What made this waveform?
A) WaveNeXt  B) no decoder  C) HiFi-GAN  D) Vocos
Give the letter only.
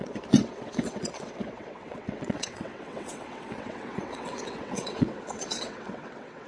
A